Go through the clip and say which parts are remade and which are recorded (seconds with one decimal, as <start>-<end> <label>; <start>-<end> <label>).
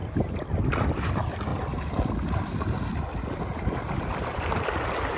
0.0-5.2 recorded